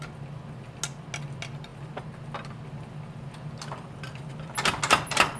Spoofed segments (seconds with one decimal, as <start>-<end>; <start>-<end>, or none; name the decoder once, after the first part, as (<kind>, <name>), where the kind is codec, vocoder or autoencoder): none